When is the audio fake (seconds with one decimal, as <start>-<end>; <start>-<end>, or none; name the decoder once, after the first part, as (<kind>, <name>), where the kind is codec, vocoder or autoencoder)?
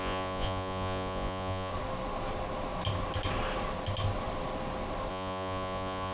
0.0-1.7 (vocoder, Vocos); 5.1-6.1